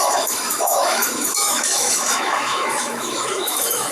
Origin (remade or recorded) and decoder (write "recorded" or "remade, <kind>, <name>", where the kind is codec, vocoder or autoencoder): remade, autoencoder, DAC-VAE